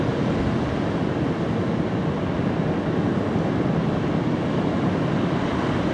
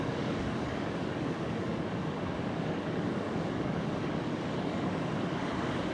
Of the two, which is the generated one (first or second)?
second